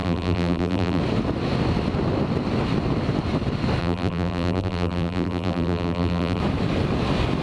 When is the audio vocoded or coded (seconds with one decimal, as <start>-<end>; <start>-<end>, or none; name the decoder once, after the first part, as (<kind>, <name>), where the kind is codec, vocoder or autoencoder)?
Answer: 0.0-1.0 (vocoder, BigVGAN v2); 3.8-6.4